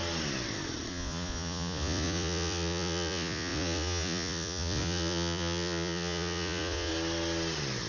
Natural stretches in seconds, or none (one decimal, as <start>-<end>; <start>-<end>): 0.0-0.9; 6.9-7.9